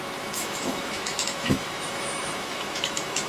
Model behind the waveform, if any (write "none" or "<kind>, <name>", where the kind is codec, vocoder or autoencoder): autoencoder, DAC-VAE